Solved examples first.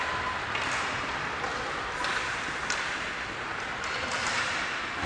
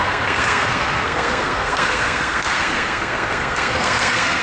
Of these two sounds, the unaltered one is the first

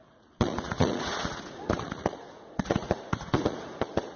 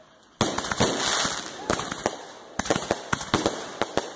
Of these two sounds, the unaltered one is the second